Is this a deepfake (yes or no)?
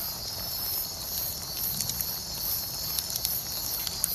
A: no